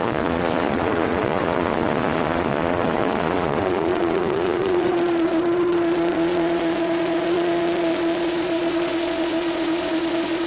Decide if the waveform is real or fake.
fake